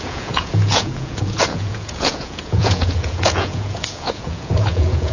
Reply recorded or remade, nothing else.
remade